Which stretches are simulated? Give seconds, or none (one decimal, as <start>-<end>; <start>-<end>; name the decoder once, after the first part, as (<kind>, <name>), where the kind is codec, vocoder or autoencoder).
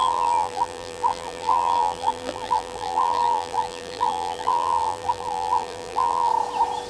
0.0-6.3 (vocoder, BigVGAN v2)